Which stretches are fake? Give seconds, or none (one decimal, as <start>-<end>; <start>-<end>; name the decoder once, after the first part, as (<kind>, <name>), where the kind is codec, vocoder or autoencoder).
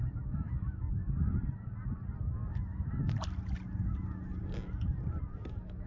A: 0.0-0.8 (autoencoder, DAC-VAE)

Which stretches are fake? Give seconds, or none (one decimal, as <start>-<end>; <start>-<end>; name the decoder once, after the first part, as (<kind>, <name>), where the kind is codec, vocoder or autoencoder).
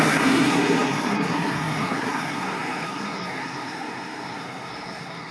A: 0.0-5.3 (codec, SNAC)